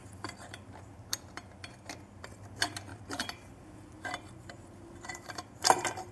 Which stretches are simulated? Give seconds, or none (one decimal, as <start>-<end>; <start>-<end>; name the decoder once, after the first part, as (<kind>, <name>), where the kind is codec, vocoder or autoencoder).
0.0-0.9 (vocoder, BigVGAN v2); 2.9-6.1